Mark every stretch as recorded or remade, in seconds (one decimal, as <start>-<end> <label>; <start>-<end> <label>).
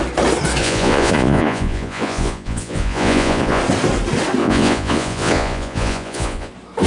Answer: 0.0-0.6 recorded; 0.6-3.6 remade; 3.6-4.4 recorded; 4.4-6.5 remade; 6.5-6.9 recorded